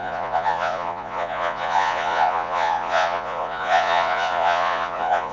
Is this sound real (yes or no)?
no